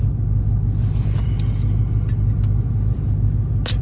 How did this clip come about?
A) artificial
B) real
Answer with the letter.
B